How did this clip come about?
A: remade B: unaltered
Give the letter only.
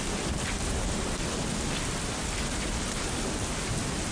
B